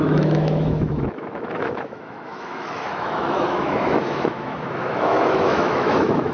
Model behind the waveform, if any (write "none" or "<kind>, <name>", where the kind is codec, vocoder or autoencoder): autoencoder, DAC-VAE